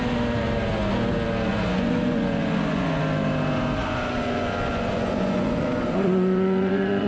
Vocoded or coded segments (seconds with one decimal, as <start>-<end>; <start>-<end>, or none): 1.5-3.0; 3.8-7.1